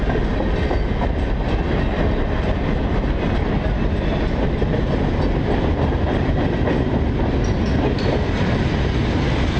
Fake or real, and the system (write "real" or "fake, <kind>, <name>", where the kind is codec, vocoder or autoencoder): real